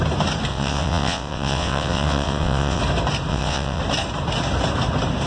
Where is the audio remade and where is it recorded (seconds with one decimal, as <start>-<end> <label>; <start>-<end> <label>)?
0.0-0.5 recorded; 0.5-2.8 remade; 2.8-3.3 recorded; 3.3-3.8 remade; 3.8-5.3 recorded